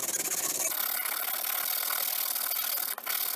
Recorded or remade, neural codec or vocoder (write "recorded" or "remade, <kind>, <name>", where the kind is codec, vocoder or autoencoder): recorded